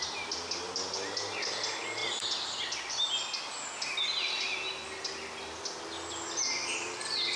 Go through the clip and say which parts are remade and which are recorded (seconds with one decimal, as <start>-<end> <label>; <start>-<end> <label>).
0.0-6.5 recorded; 6.5-7.4 remade